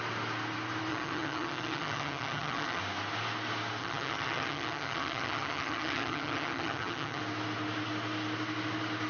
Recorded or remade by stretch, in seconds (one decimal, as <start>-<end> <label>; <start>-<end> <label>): 0.0-0.9 recorded; 0.9-2.8 remade; 2.8-3.8 recorded; 3.8-7.2 remade; 7.2-9.1 recorded